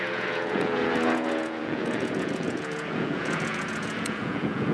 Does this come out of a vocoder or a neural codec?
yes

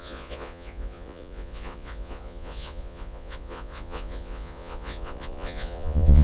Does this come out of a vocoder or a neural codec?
yes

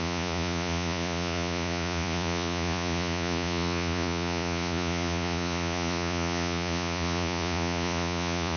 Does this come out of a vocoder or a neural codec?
yes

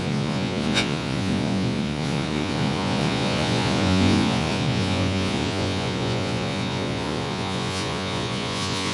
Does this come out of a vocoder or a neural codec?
yes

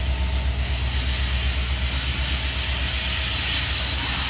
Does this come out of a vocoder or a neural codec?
no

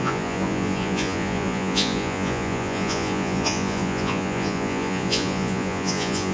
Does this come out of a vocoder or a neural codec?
yes